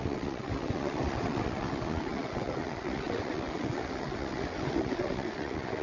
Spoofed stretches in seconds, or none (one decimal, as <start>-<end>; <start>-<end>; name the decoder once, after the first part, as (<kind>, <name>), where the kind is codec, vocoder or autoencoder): 0.0-5.8 (vocoder, WaveNeXt)